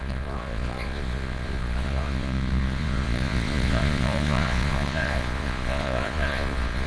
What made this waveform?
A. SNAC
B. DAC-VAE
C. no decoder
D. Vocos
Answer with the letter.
D